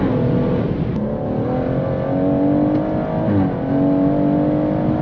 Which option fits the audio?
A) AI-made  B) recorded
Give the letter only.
B